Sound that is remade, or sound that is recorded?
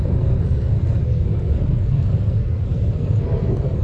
remade